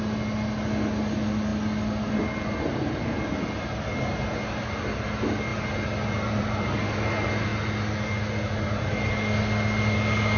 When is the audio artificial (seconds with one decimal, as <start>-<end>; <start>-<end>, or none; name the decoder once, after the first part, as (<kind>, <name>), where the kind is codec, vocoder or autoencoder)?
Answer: none